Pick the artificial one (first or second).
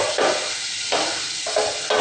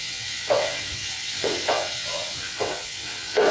second